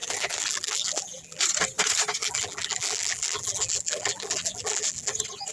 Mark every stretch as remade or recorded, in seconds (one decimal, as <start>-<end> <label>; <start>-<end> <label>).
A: 0.0-1.4 remade; 1.4-2.2 recorded; 2.2-5.1 remade; 5.1-5.5 recorded